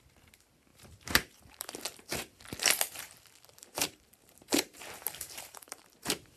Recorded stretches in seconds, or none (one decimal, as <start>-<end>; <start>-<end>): 0.0-0.7; 1.7-3.6; 5.8-6.4